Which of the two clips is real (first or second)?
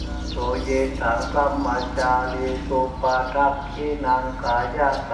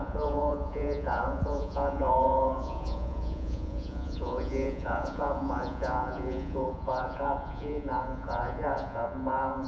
first